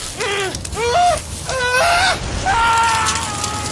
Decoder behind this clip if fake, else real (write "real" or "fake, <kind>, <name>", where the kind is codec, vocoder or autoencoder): real